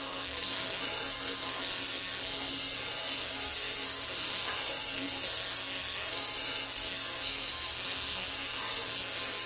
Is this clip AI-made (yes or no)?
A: yes